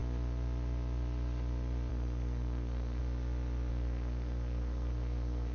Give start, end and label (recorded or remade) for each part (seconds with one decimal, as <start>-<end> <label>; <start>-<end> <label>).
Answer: 0.0-1.9 recorded; 1.9-3.0 remade; 3.0-3.7 recorded; 3.7-5.5 remade